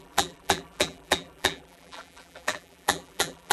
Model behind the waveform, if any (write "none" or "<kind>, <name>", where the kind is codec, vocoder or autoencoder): vocoder, BigVGAN v2